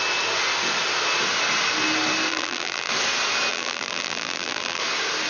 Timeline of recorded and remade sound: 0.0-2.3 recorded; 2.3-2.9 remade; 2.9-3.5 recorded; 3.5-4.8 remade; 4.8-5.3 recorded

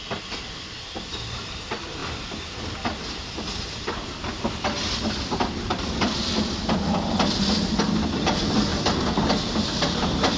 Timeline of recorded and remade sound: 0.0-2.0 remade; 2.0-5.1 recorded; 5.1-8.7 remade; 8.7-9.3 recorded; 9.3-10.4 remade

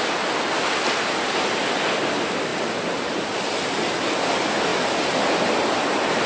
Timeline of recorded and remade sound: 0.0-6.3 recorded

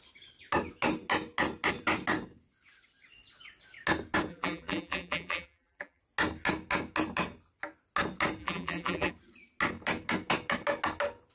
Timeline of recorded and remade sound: 0.0-4.3 recorded; 4.3-6.0 remade; 6.0-8.4 recorded; 8.4-9.1 remade; 9.1-11.3 recorded

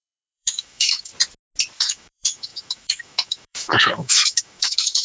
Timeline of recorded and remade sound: 0.0-1.1 remade; 1.1-1.8 recorded; 1.8-5.0 remade

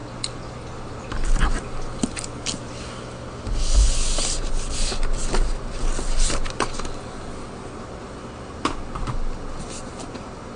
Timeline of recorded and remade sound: 0.0-10.6 recorded

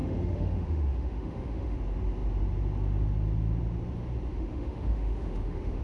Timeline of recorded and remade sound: 0.0-1.8 remade; 1.8-4.3 recorded; 4.3-5.8 remade

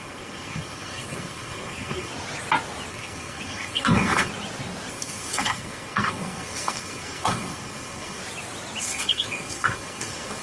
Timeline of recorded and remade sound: 0.0-2.1 remade; 2.1-2.9 recorded; 2.9-4.3 remade; 4.3-4.9 recorded; 4.9-8.2 remade; 8.2-8.8 recorded; 8.8-10.4 remade